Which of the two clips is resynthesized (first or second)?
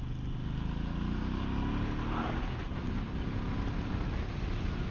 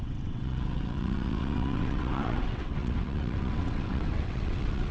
second